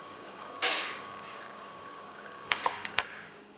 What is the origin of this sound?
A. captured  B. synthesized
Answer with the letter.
B